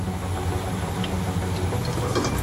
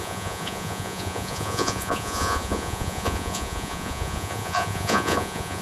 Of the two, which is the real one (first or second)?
first